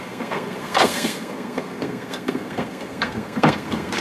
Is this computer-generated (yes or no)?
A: yes